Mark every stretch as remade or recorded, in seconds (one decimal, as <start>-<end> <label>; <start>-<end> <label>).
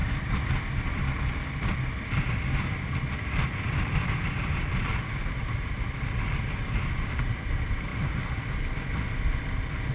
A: 0.0-9.9 recorded